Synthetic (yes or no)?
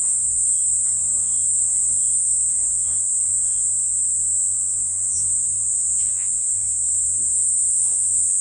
yes